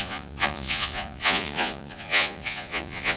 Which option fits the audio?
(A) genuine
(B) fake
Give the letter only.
B